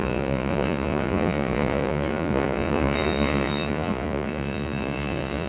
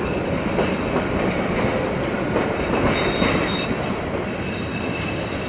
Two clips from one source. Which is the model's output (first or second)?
first